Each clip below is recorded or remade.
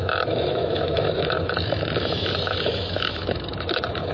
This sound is remade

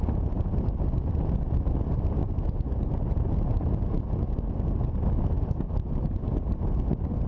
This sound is recorded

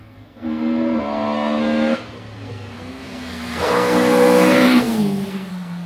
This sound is remade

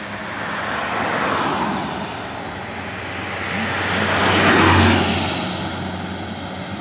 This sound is recorded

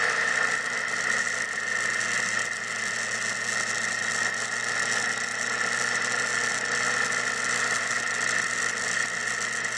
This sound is recorded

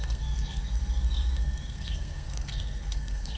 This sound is remade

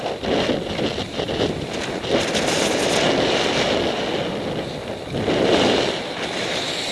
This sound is recorded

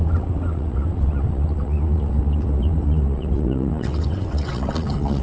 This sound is remade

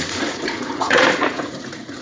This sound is remade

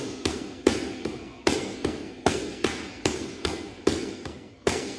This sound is remade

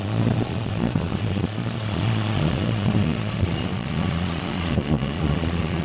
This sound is remade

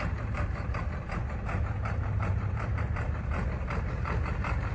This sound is remade